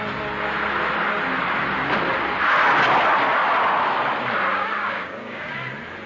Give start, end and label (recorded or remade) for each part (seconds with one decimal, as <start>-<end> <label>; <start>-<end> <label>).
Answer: 0.0-4.5 recorded; 4.5-5.5 remade; 5.5-6.1 recorded

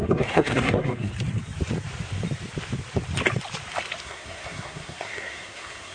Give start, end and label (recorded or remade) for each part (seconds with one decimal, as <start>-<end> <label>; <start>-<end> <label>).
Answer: 0.0-1.1 remade; 1.1-4.0 recorded; 4.0-5.9 remade

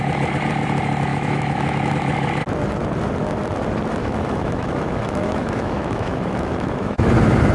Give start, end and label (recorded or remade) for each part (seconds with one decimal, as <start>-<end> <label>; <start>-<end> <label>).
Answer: 0.0-1.1 recorded; 1.1-1.9 remade; 1.9-4.0 recorded; 4.0-7.1 remade; 7.1-7.5 recorded

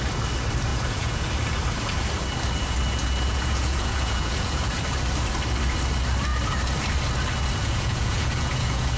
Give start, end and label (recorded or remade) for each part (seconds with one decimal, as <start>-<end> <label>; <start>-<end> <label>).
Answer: 0.0-0.7 recorded; 0.7-1.3 remade; 1.3-3.3 recorded; 3.3-4.8 remade; 4.8-7.6 recorded; 7.6-9.0 remade

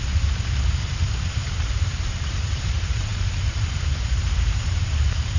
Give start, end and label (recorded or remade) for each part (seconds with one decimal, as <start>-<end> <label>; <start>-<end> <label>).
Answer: 0.0-5.4 remade

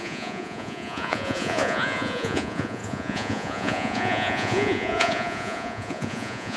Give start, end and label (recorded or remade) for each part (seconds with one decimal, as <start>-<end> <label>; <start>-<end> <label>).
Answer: 0.0-6.6 remade

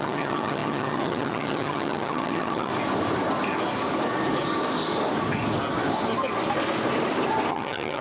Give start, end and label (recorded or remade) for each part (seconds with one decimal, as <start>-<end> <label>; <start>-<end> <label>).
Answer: 0.0-2.7 remade; 2.7-7.5 recorded; 7.5-8.0 remade